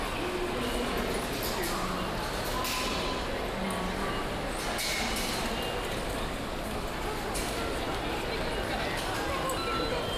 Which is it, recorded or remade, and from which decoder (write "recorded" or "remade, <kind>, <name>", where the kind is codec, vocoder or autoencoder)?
recorded